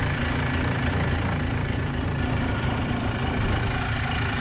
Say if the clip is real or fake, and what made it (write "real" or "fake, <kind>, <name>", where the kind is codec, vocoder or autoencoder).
fake, vocoder, BigVGAN v2